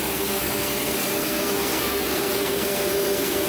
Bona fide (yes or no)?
no